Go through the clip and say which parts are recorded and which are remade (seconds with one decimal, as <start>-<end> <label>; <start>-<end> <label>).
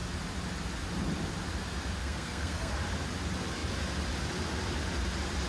0.0-2.0 recorded; 2.0-2.7 remade; 2.7-5.5 recorded